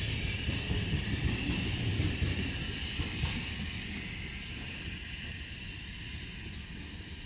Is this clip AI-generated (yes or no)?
no